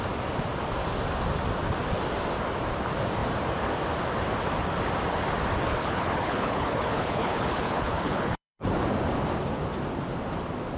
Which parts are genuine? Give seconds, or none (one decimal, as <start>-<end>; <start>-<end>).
0.0-5.8; 8.7-10.8